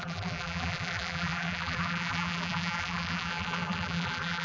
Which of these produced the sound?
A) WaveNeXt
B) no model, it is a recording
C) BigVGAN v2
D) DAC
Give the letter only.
C